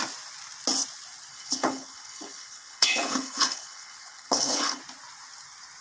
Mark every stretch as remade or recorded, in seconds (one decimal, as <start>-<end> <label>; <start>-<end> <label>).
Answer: 0.0-1.3 recorded; 1.3-4.8 remade; 4.8-5.8 recorded